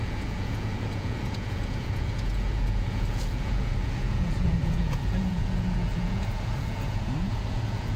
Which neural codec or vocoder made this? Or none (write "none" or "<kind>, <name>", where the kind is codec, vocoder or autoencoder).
vocoder, Vocos